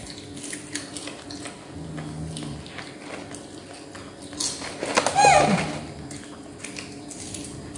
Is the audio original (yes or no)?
yes